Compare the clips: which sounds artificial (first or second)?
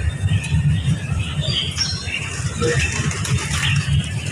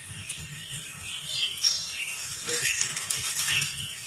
second